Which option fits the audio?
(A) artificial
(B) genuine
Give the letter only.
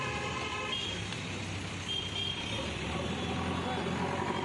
A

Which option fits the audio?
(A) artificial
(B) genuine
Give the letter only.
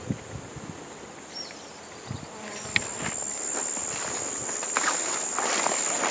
B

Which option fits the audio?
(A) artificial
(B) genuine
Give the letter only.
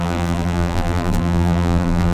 A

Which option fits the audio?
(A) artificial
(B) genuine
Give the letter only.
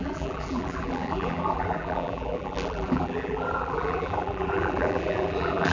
A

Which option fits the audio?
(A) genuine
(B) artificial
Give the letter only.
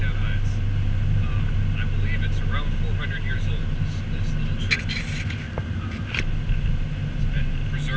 A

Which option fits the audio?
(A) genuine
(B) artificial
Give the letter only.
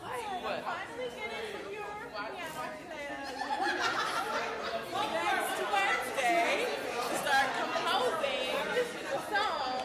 A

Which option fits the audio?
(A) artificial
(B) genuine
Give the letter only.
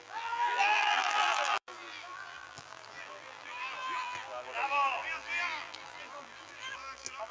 A